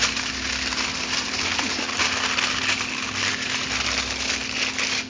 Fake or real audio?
real